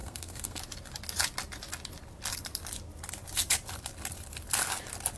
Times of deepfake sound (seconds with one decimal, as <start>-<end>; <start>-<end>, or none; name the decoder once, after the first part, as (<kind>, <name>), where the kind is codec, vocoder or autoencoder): 0.0-0.6 (codec, SNAC)